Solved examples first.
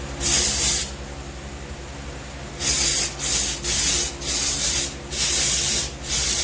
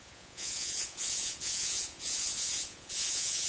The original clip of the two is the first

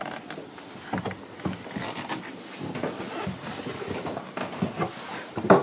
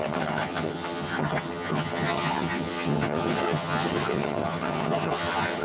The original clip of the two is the first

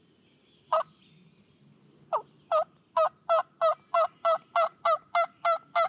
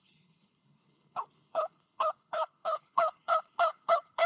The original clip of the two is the first